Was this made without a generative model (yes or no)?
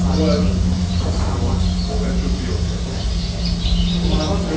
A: yes